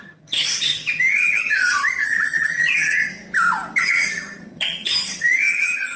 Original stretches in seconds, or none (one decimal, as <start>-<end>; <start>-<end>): 3.1-3.8